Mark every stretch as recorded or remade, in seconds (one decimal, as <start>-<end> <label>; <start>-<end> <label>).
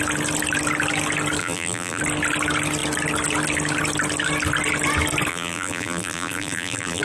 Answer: 0.0-1.4 recorded; 1.4-2.0 remade; 2.0-5.3 recorded; 5.3-7.0 remade